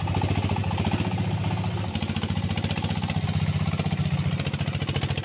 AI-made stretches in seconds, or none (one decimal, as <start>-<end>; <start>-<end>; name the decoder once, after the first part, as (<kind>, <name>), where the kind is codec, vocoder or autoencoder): none